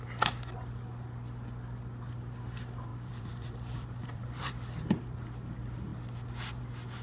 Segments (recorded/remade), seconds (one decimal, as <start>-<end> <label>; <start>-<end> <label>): 0.0-2.9 recorded; 2.9-4.5 remade; 4.5-7.0 recorded